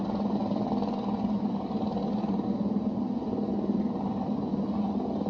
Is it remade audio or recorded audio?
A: recorded